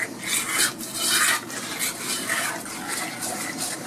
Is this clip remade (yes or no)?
no